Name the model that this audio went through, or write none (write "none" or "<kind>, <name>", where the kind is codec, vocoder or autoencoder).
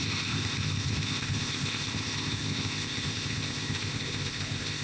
codec, ZipCodec